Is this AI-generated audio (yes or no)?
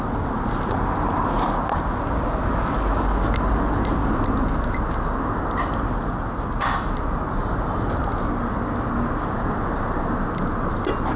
no